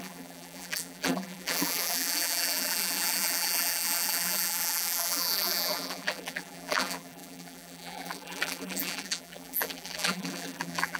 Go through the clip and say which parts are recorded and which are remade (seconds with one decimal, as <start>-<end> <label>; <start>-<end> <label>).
0.0-11.0 remade